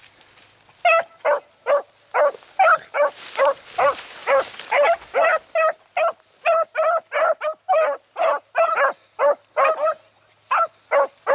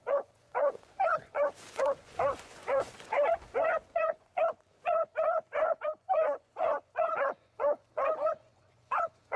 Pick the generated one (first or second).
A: second